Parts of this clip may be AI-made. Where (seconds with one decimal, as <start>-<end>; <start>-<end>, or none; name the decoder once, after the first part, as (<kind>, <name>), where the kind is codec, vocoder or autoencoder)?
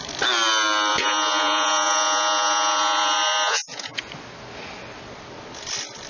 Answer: 0.9-4.1 (vocoder, Vocos)